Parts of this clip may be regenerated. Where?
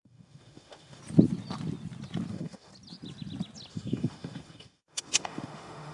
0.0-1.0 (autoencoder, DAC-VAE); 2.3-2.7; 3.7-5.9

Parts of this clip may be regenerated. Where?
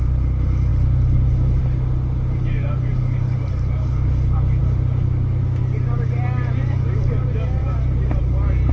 none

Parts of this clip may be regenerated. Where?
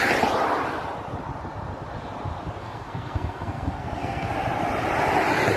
2.6-4.3 (codec, SNAC)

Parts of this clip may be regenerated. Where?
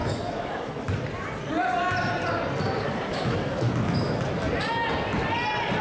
0.0-0.9 (autoencoder, DAC-VAE); 3.1-4.2